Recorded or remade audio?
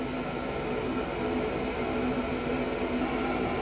recorded